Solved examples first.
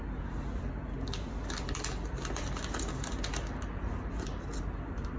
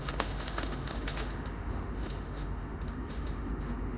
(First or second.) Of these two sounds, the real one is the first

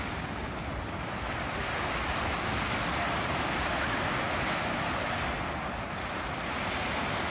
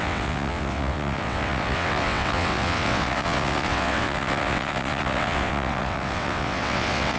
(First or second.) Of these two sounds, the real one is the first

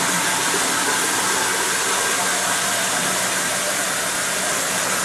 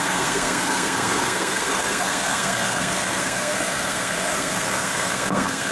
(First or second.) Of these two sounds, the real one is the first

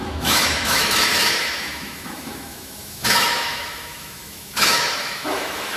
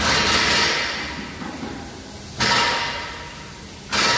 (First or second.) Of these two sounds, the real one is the second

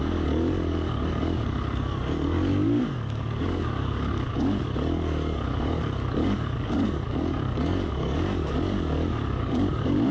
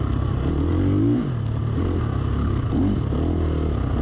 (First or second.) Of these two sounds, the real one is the second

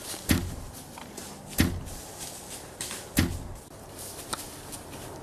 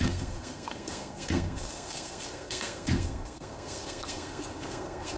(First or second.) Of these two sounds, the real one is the first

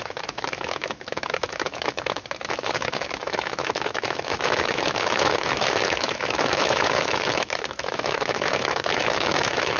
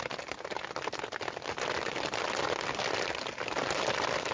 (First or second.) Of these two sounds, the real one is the second